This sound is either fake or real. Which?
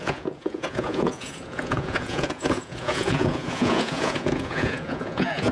fake